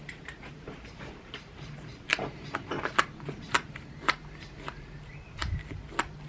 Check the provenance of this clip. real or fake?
fake